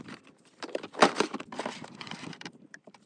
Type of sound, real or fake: fake